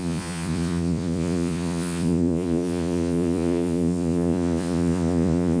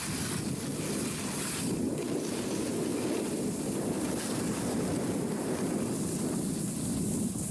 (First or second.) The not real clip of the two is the first